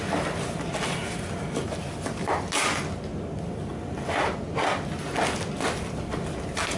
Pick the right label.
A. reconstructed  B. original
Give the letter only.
B